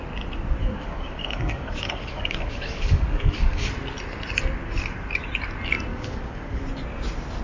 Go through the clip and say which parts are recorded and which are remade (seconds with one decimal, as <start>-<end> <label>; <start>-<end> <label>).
0.0-0.6 recorded; 0.6-3.7 remade; 3.7-5.9 recorded; 5.9-6.6 remade; 6.6-7.4 recorded

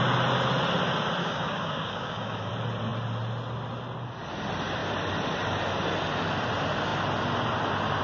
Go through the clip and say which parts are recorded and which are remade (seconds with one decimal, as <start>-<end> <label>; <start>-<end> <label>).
0.0-1.2 recorded; 1.2-2.5 remade; 2.5-8.0 recorded

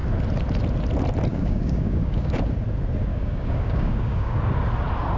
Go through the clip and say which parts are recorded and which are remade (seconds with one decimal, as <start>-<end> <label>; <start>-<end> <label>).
0.0-1.3 recorded; 1.3-2.4 remade; 2.4-3.1 recorded; 3.1-4.4 remade; 4.4-5.2 recorded

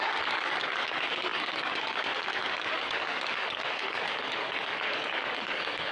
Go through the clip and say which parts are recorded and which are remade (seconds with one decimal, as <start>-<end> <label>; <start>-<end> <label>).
0.0-5.9 remade

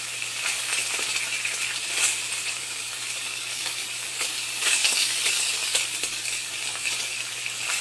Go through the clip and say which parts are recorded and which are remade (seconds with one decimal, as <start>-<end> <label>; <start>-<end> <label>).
0.0-0.8 remade; 0.8-2.6 recorded; 2.6-7.8 remade

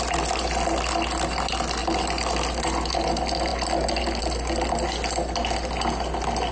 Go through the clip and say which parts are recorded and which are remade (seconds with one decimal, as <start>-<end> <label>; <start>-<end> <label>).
0.0-6.5 recorded